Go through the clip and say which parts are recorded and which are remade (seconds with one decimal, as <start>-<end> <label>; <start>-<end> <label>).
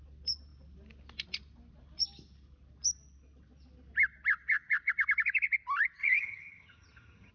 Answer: 0.0-6.0 recorded; 6.0-7.3 remade